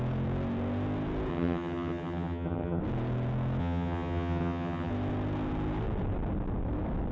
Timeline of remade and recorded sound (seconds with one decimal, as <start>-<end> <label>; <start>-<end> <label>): 0.0-1.3 recorded; 1.3-2.8 remade; 2.8-3.6 recorded; 3.6-4.9 remade; 4.9-7.1 recorded

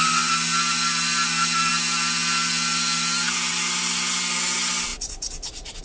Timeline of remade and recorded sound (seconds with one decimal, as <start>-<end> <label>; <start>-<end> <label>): 0.0-5.8 recorded

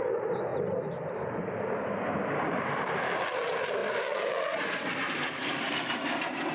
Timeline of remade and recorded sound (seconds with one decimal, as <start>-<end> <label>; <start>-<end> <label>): 0.0-6.5 recorded

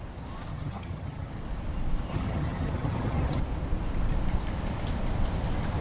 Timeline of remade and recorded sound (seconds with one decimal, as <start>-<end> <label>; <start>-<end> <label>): 0.0-0.5 recorded; 0.5-1.3 remade; 1.3-2.1 recorded; 2.1-3.4 remade; 3.4-5.8 recorded